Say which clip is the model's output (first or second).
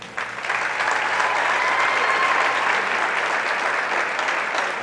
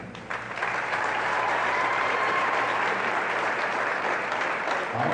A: second